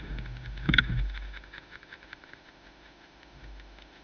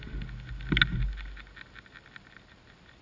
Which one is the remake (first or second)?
first